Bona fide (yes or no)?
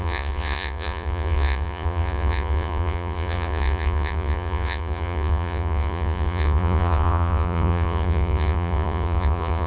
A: no